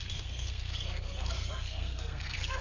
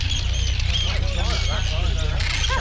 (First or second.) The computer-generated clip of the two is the first